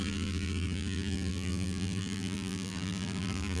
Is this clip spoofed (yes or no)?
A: yes